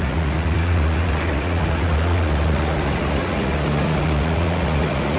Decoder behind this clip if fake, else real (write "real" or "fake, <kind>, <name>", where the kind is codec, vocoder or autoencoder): fake, vocoder, Vocos